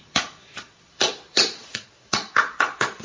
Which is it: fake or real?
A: fake